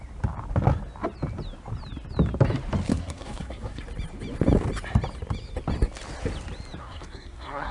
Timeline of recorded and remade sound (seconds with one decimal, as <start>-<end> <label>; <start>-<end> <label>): 0.0-2.9 recorded; 2.9-3.8 remade; 3.8-6.8 recorded; 6.8-7.7 remade